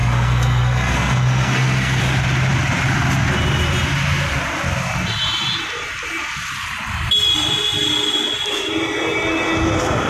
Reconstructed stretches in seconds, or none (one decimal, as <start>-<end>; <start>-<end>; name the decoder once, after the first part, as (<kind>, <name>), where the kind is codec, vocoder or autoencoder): 0.0-2.0 (codec, SNAC)

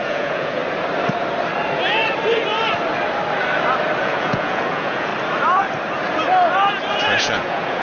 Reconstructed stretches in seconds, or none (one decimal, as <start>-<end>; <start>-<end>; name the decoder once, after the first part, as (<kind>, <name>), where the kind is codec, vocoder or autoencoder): 0.0-0.6 (vocoder, Vocos); 4.0-5.1; 6.9-7.8

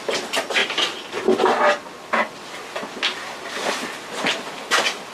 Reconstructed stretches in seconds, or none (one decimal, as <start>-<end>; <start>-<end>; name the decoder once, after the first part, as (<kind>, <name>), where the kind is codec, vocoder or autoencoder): none

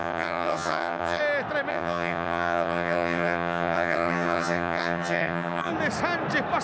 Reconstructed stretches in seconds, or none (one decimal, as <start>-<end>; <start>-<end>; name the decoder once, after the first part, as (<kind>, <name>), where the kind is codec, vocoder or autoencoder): 0.0-1.2 (vocoder, HiFi-GAN); 1.7-5.7